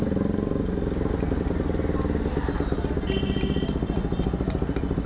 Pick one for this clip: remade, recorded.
recorded